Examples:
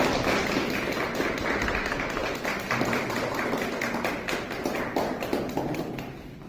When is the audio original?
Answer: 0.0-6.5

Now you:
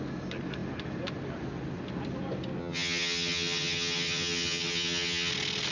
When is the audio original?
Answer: 0.0-2.6; 5.3-5.7

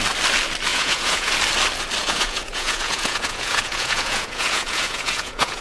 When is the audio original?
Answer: 0.0-0.7; 1.3-2.0

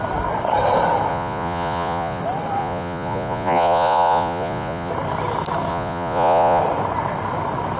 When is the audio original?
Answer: 0.0-1.1; 2.2-2.6; 4.9-5.7; 6.6-7.8

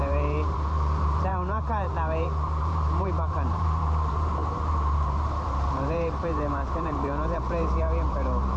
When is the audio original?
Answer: none